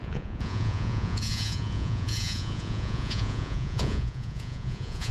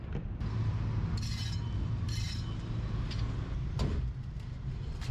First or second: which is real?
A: second